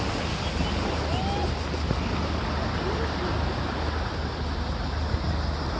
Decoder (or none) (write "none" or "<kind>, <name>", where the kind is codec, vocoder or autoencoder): none